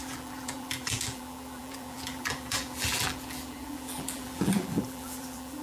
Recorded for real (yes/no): no